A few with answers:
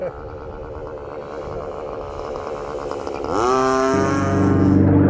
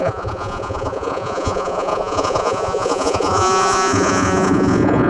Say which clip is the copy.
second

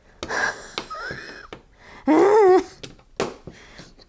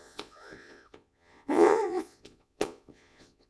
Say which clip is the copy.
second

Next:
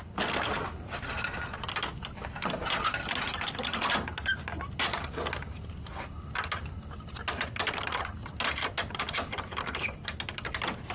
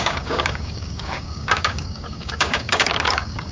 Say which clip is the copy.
second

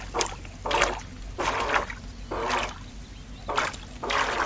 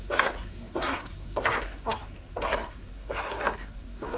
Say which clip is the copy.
second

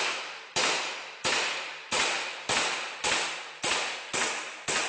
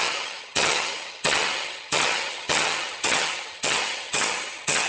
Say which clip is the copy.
second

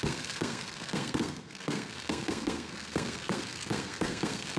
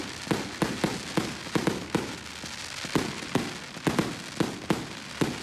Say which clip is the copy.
first